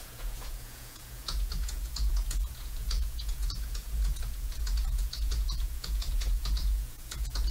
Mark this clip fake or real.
fake